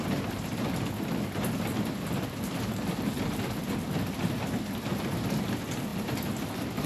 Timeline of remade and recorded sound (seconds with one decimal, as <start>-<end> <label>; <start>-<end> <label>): 0.0-6.9 recorded